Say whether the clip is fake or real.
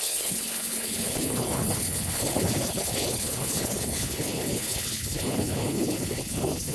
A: fake